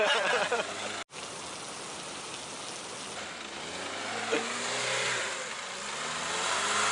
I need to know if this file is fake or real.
real